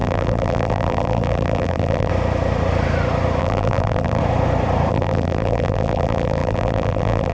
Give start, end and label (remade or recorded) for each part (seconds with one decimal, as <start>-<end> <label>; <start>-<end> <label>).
0.0-2.1 remade; 2.1-3.4 recorded; 3.4-4.2 remade; 4.2-4.9 recorded; 4.9-7.3 remade